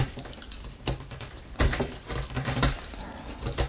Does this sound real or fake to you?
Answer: fake